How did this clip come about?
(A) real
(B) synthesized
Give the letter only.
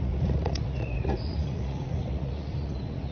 B